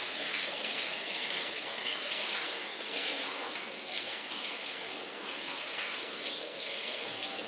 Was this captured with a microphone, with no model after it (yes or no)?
no